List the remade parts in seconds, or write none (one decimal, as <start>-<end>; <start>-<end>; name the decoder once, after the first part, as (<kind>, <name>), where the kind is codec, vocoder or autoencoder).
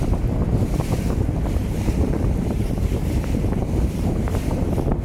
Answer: 1.6-4.6 (vocoder, BigVGAN v2)